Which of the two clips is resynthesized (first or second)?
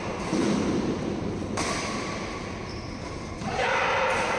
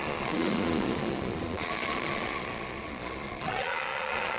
second